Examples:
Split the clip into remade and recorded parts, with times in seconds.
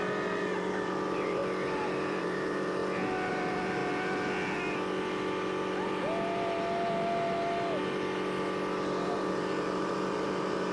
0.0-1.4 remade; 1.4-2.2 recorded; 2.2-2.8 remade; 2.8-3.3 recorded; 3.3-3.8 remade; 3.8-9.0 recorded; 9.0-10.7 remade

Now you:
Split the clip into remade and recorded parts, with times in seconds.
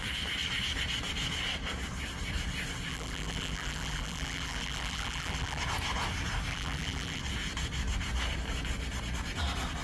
0.0-2.9 recorded; 2.9-5.6 remade; 5.6-6.5 recorded; 6.5-7.2 remade; 7.2-9.8 recorded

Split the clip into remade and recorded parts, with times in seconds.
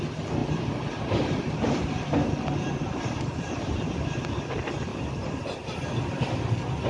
0.0-0.4 recorded; 0.4-3.9 remade; 3.9-4.9 recorded; 4.9-5.4 remade; 5.4-6.9 recorded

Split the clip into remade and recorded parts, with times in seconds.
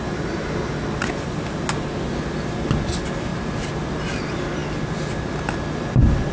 0.0-3.3 recorded; 3.3-3.9 remade; 3.9-6.3 recorded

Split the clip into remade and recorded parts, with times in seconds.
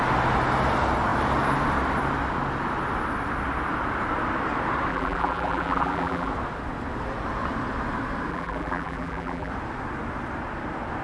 0.0-4.9 recorded; 4.9-6.3 remade; 6.3-8.3 recorded; 8.3-9.5 remade; 9.5-11.0 recorded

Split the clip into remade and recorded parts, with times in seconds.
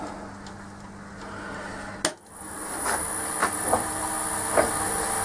0.0-3.4 recorded; 3.4-3.9 remade; 3.9-5.2 recorded